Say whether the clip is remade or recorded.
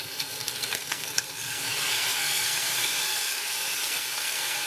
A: remade